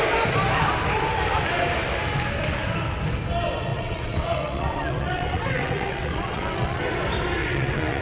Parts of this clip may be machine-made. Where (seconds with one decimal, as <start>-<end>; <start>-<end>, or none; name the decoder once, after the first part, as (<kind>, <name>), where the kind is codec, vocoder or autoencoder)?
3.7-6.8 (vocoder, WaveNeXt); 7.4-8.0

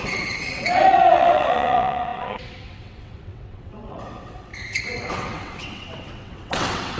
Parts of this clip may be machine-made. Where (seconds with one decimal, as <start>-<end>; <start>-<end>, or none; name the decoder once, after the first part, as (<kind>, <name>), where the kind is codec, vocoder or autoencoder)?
0.0-4.5 (vocoder, WaveNeXt); 5.1-7.0

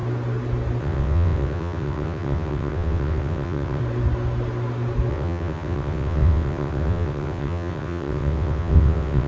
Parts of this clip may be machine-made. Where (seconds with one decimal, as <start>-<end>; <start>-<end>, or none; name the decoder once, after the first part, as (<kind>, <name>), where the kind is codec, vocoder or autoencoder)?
0.8-3.8 (vocoder, WaveNeXt); 5.1-9.3

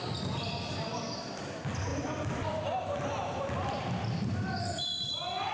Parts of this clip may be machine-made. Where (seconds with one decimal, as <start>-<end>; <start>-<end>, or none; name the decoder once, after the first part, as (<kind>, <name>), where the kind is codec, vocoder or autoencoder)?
none